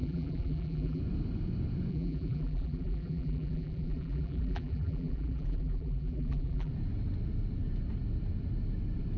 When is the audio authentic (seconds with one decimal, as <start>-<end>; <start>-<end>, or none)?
1.0-1.9; 6.7-9.2